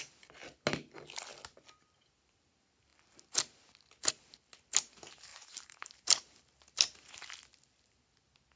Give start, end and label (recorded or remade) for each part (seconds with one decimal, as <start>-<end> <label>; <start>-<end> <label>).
0.0-5.3 recorded; 5.3-6.4 remade; 6.4-8.6 recorded